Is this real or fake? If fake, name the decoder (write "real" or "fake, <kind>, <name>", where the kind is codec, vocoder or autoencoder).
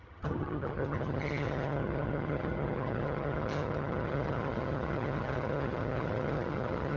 fake, vocoder, HiFi-GAN